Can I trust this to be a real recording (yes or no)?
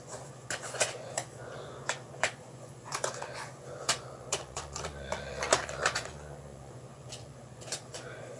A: no